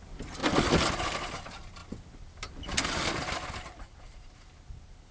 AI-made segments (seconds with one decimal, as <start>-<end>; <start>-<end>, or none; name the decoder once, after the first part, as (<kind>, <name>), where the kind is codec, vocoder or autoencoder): none